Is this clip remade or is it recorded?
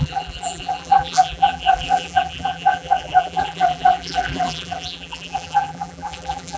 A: remade